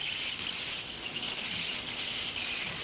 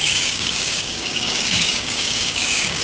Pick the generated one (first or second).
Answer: second